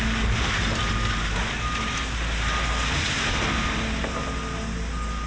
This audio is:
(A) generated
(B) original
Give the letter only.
B